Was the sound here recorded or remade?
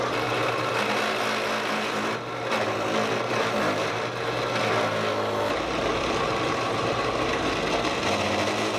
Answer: recorded